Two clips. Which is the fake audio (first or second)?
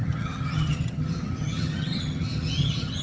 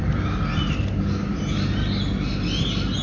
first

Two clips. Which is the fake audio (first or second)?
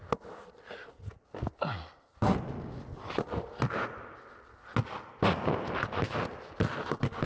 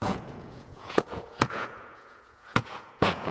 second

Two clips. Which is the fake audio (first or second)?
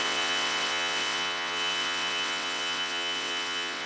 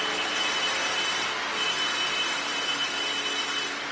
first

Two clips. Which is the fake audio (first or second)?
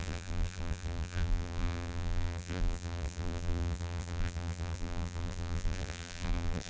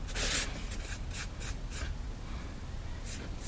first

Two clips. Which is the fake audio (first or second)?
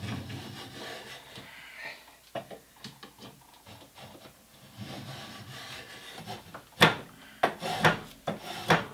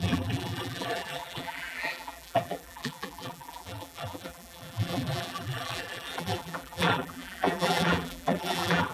second